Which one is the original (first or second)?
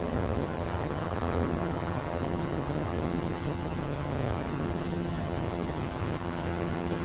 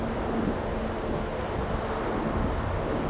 second